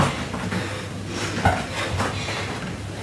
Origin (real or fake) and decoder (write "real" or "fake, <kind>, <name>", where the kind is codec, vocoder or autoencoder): real